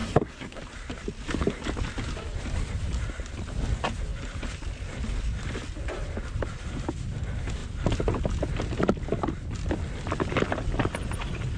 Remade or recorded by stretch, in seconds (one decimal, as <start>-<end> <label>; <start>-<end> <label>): 0.0-0.6 remade; 0.6-11.6 recorded